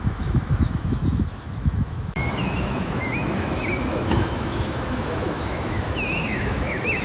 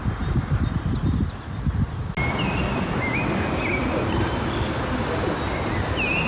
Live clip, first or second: second